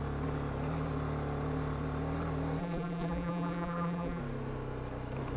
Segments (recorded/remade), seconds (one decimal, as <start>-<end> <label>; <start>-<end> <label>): 0.0-2.6 recorded; 2.6-4.2 remade; 4.2-5.4 recorded